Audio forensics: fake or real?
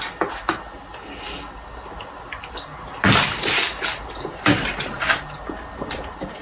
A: real